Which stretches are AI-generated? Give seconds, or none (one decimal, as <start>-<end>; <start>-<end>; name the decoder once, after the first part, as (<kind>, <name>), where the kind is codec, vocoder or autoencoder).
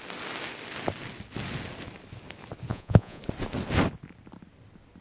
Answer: 2.7-3.2 (vocoder, Vocos)